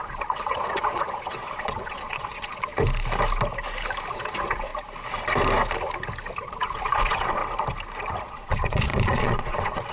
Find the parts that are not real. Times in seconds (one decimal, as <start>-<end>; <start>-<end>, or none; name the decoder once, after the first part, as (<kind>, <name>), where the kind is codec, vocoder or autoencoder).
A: 0.0-2.7 (vocoder, Vocos); 4.1-4.7; 6.4-7.4; 8.2-9.9